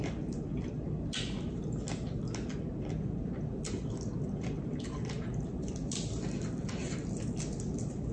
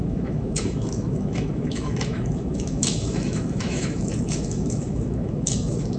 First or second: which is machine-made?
second